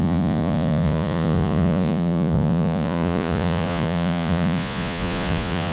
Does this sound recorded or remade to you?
remade